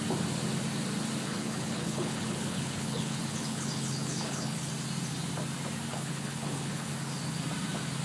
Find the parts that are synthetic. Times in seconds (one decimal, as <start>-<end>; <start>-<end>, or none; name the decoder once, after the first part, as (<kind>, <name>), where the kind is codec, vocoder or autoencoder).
1.2-4.7 (codec, HILCodec); 5.9-6.9